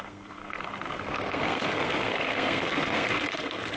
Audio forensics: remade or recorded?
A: remade